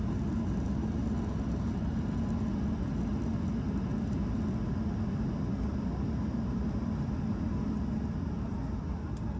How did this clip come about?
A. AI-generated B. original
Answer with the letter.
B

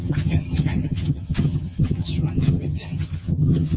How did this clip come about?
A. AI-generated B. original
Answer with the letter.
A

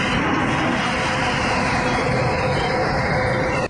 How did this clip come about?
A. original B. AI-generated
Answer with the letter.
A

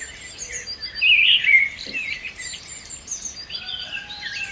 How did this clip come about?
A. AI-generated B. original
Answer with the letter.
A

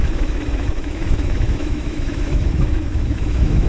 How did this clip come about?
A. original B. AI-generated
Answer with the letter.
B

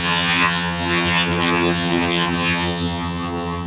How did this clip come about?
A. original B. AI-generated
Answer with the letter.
B